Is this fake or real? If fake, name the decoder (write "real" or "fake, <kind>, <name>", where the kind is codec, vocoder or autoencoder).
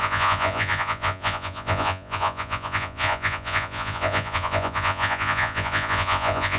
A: fake, vocoder, Vocos